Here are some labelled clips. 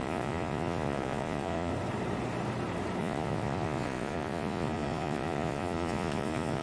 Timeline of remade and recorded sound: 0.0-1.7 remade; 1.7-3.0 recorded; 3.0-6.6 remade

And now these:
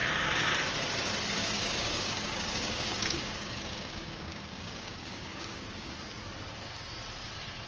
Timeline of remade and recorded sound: 0.0-0.5 remade; 0.5-1.4 recorded; 1.4-5.9 remade; 5.9-7.7 recorded

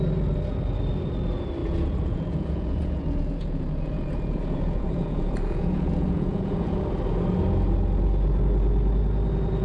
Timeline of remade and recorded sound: 0.0-1.6 recorded; 1.6-6.8 remade; 6.8-9.6 recorded

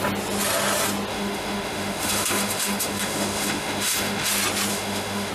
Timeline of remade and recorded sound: 0.0-1.1 recorded; 1.1-4.3 remade; 4.3-4.7 recorded; 4.7-5.3 remade

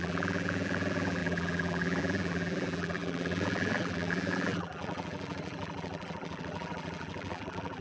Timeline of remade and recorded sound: 0.0-7.8 remade

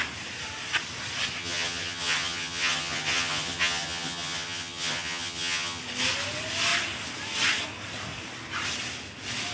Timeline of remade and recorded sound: 0.0-1.4 recorded; 1.4-5.8 remade; 5.8-9.5 recorded

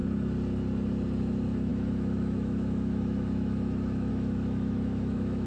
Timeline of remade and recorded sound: 0.0-1.2 recorded; 1.2-5.5 remade

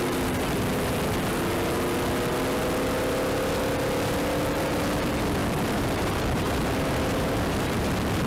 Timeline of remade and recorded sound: 0.0-5.4 recorded; 5.4-8.3 remade